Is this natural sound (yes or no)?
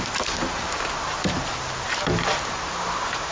yes